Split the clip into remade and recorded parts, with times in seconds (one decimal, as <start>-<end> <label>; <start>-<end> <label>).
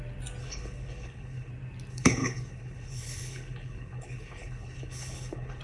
0.0-0.4 recorded; 0.4-1.5 remade; 1.5-1.9 recorded; 1.9-5.6 remade